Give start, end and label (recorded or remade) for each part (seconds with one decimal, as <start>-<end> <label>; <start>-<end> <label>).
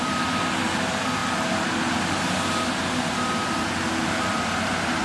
0.0-5.0 recorded